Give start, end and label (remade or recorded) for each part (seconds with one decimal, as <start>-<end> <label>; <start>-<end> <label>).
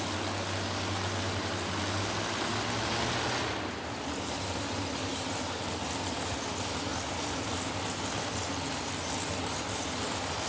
0.0-5.1 recorded; 5.1-5.7 remade; 5.7-10.5 recorded